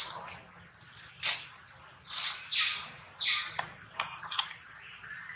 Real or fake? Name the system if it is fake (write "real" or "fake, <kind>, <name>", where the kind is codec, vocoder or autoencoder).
real